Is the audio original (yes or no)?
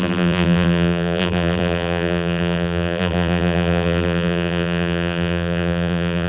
no